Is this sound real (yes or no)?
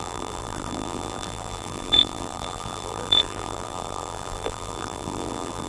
no